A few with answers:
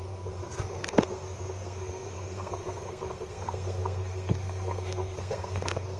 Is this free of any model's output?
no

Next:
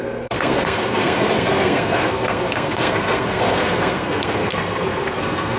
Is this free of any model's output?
no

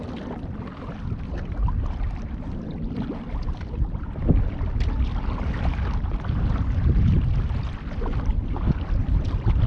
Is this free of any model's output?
yes